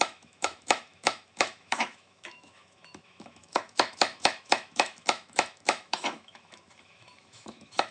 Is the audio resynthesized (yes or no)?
yes